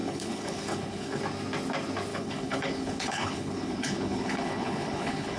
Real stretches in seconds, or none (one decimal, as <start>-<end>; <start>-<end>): 1.2-2.1